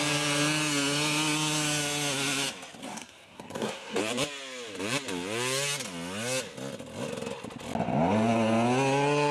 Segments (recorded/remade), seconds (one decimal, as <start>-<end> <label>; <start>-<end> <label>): 0.0-2.8 recorded; 2.8-4.0 remade; 4.0-9.3 recorded

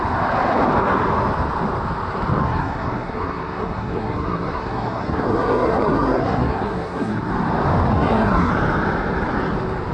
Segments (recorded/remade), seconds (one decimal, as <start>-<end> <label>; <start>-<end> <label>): 0.0-2.4 recorded; 2.4-7.3 remade; 7.3-7.9 recorded; 7.9-8.5 remade; 8.5-9.9 recorded

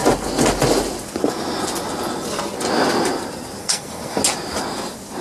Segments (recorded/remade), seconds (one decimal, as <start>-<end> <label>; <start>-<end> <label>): 0.0-3.6 recorded; 3.6-4.2 remade; 4.2-5.2 recorded

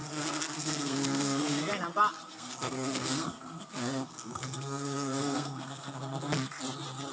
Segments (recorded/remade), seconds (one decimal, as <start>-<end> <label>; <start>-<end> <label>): 0.0-1.7 remade; 1.7-2.3 recorded; 2.3-6.6 remade; 6.6-7.1 recorded

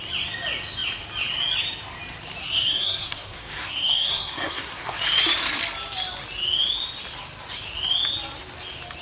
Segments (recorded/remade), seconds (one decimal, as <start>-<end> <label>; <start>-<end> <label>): 0.0-2.4 recorded; 2.4-5.0 remade; 5.0-9.0 recorded

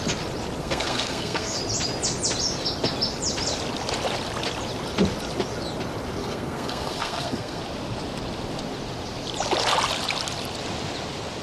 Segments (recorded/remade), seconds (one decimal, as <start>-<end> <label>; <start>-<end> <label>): 0.0-0.6 recorded; 0.6-1.6 remade; 1.6-6.2 recorded; 6.2-7.6 remade; 7.6-11.4 recorded